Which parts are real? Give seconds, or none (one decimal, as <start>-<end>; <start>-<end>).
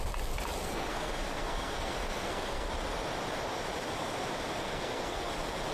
0.0-0.6; 2.7-4.5; 5.3-5.7